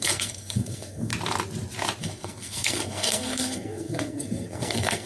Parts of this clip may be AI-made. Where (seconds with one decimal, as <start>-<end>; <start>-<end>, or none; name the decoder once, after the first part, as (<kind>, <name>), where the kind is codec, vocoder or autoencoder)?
0.0-1.1 (codec, SNAC); 2.0-5.1